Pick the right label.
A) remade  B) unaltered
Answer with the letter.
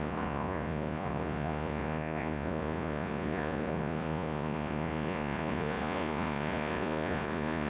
A